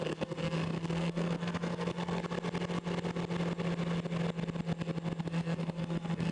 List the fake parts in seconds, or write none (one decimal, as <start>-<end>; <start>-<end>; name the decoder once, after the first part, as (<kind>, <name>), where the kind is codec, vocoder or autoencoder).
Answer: 0.0-2.2 (codec, SNAC); 5.2-6.3